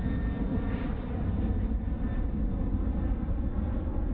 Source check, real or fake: real